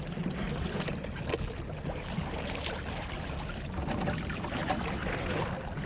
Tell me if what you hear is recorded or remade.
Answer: recorded